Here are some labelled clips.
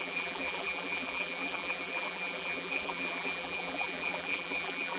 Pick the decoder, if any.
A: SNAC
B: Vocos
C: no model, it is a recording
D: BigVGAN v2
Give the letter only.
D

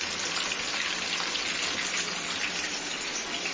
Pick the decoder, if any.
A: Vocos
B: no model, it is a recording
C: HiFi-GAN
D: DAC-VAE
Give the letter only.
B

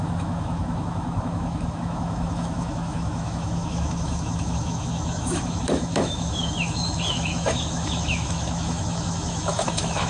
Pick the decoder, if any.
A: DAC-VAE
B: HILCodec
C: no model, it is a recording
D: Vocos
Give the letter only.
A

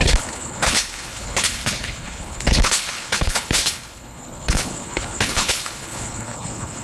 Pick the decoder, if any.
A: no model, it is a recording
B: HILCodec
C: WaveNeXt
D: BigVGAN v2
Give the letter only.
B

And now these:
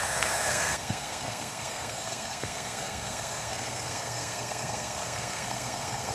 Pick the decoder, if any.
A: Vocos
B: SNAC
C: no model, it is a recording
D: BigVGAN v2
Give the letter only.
B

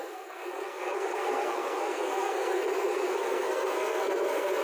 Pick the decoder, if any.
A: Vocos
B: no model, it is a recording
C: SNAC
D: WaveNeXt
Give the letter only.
C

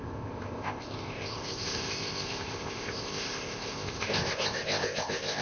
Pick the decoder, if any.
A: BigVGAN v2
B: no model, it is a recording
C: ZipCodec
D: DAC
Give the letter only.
C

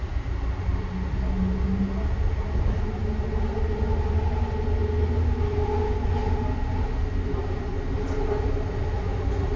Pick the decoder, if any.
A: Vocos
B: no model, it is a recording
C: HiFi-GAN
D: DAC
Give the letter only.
B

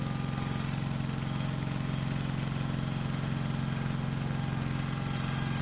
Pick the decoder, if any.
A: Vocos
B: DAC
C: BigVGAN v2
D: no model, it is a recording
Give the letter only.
D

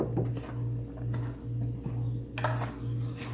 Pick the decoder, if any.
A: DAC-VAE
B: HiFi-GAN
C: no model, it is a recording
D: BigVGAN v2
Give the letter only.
C